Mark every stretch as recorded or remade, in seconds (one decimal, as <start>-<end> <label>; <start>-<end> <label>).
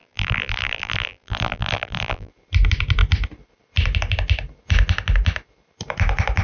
0.0-2.3 remade; 2.3-6.4 recorded